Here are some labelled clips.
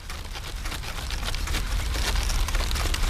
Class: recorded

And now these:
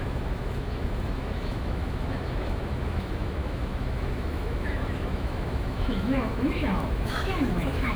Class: remade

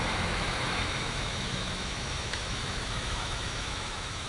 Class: remade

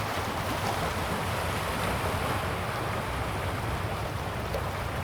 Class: recorded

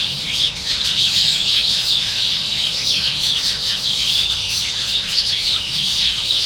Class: remade